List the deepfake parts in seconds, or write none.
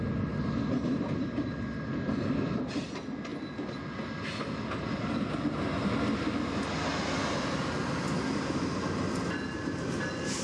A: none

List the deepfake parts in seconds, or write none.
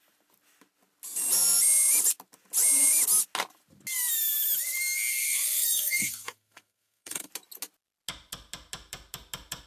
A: 5.1-7.3 (codec, SNAC)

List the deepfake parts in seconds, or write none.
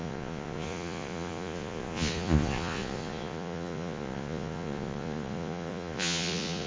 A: 0.0-6.7 (vocoder, Vocos)